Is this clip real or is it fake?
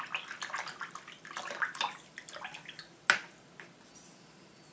real